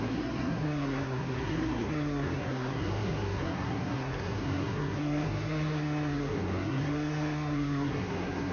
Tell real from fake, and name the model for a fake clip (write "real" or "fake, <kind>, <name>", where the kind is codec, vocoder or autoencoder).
fake, codec, SNAC